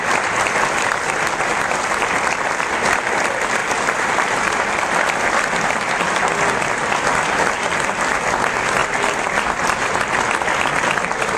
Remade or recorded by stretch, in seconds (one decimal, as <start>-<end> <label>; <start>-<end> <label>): 0.0-11.4 recorded